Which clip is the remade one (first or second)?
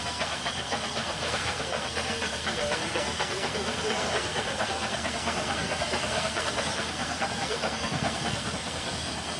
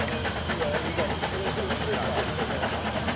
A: first